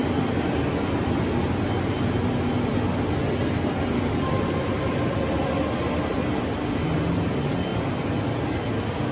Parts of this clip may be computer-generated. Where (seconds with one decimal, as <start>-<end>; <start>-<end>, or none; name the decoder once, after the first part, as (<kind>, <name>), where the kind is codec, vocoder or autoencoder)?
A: none